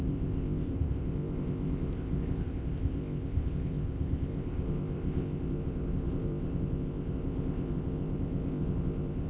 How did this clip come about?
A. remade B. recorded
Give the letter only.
A